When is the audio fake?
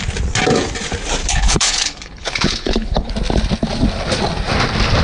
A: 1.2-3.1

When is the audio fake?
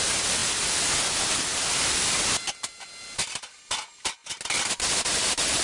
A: none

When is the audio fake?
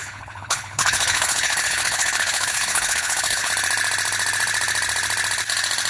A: 0.0-3.5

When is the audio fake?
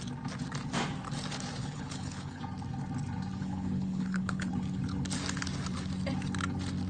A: 1.6-2.4; 3.4-4.5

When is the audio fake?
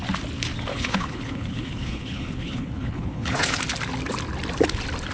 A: 0.7-3.6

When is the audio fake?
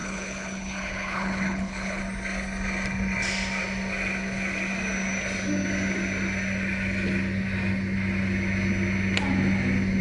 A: 0.0-2.0